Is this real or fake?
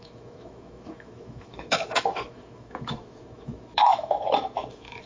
fake